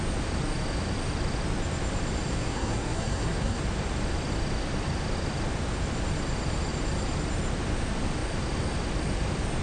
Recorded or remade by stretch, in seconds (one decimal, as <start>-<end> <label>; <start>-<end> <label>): 0.0-2.3 recorded; 2.3-3.6 remade; 3.6-9.6 recorded